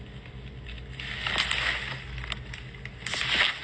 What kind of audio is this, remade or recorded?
recorded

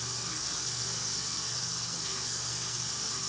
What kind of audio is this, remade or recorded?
remade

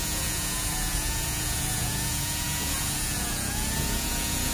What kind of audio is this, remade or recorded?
remade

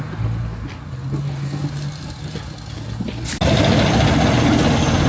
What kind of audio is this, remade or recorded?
recorded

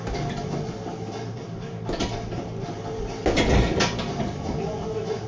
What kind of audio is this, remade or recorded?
recorded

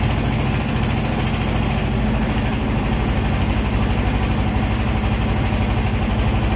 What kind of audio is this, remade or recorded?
recorded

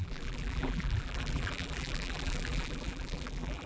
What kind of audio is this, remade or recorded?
remade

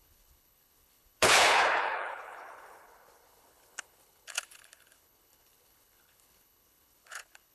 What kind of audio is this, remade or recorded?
remade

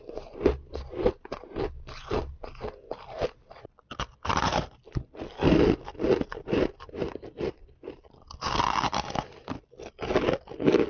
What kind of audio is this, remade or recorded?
recorded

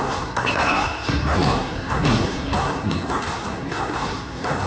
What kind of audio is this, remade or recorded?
remade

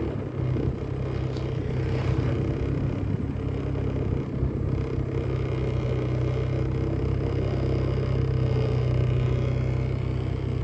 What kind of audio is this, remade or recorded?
recorded